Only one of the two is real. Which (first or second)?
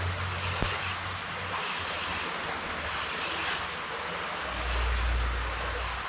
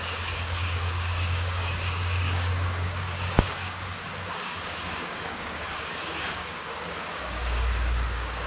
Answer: first